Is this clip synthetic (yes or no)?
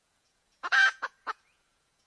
yes